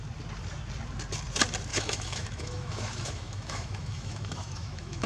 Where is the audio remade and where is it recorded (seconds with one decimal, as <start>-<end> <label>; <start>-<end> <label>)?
0.0-1.7 recorded; 1.7-5.1 remade